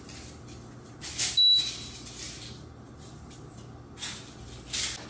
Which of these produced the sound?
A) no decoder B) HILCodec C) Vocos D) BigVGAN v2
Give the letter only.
A